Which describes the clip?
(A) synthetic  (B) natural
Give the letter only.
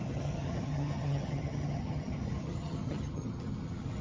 A